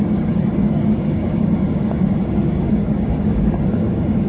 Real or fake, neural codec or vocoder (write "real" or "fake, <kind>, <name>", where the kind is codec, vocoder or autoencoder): fake, codec, DAC